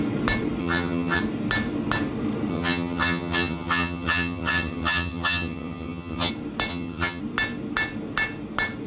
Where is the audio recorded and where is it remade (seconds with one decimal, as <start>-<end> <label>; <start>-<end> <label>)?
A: 0.0-0.6 recorded; 0.6-1.2 remade; 1.2-2.5 recorded; 2.5-6.3 remade; 6.3-6.7 recorded; 6.7-7.2 remade; 7.2-8.9 recorded